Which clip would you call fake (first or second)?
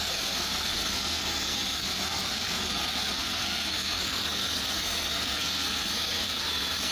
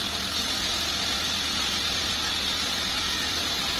first